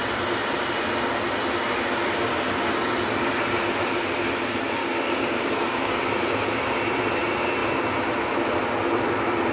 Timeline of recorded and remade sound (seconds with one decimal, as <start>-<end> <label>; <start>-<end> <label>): 0.0-4.8 recorded; 4.8-6.0 remade; 6.0-9.5 recorded